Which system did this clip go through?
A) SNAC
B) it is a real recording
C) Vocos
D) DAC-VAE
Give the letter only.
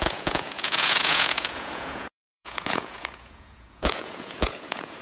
C